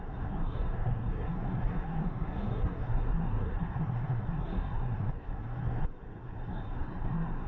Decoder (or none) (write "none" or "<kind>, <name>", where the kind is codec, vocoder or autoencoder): codec, SNAC